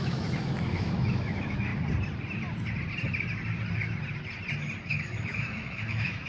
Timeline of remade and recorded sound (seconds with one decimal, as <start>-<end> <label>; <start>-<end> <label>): 0.0-1.7 remade; 1.7-4.8 recorded; 4.8-6.3 remade